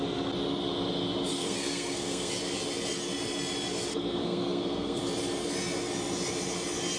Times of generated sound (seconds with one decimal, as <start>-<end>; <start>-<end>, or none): 1.3-2.3; 3.9-5.0

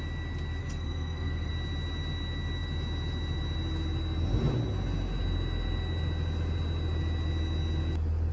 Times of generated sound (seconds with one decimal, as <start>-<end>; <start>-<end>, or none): 0.6-1.5

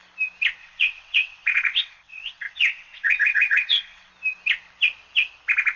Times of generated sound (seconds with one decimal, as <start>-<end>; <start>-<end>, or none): 0.6-4.1

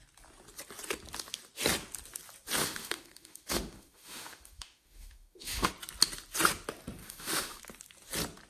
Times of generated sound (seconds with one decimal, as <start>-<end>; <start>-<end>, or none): 2.6-5.7; 7.0-7.6

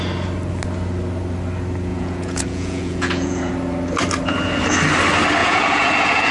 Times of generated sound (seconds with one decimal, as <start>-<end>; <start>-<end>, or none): 1.9-3.5; 5.4-6.3